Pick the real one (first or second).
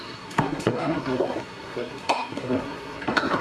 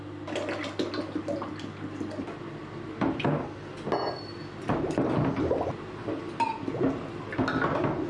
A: second